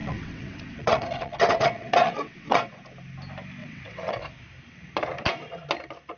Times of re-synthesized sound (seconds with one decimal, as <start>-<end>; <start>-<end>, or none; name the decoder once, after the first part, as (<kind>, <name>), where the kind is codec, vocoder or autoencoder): 0.0-2.8 (vocoder, WaveNeXt); 3.6-4.2